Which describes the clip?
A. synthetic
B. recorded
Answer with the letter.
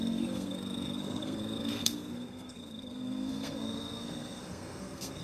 A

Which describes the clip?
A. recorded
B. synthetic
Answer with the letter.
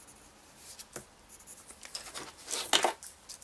A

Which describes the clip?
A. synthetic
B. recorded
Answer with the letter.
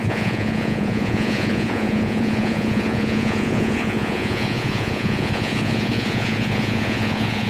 A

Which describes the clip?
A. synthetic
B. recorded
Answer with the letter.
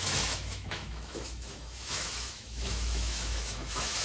A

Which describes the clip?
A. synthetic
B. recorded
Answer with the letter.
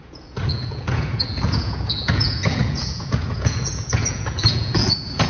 A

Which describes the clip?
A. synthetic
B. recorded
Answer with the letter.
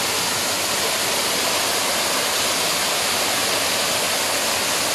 B